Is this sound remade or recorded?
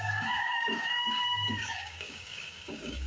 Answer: remade